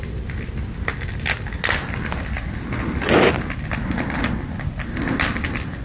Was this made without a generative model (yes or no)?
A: yes